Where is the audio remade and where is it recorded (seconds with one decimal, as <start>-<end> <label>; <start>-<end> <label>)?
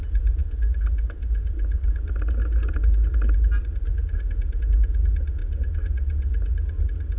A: 0.0-7.2 recorded